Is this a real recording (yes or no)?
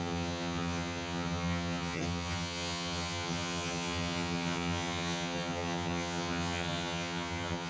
no